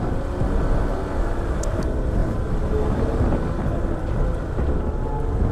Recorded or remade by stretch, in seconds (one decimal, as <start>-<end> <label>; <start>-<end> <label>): 0.0-5.5 recorded